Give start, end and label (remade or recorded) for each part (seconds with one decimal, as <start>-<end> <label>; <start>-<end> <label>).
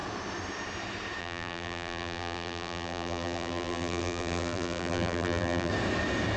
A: 0.0-1.2 recorded; 1.2-5.7 remade; 5.7-6.4 recorded